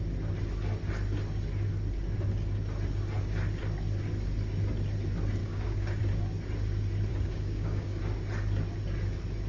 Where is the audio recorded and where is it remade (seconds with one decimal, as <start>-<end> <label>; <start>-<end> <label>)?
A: 0.0-5.4 recorded; 5.4-6.0 remade; 6.0-7.1 recorded; 7.1-8.0 remade; 8.0-9.5 recorded